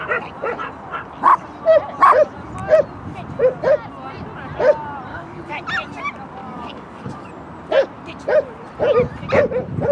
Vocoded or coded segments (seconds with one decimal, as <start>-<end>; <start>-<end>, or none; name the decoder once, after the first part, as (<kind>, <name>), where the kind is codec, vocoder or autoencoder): 5.1-5.6 (codec, DAC); 6.4-7.3